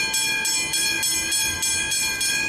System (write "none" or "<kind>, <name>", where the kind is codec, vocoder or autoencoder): none